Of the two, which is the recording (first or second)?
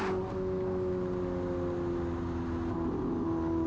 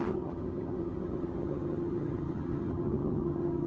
first